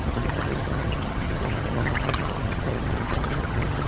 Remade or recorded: remade